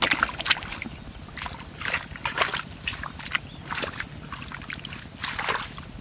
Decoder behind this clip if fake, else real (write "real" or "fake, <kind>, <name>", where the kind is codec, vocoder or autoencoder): real